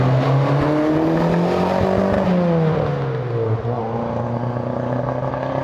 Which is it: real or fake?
real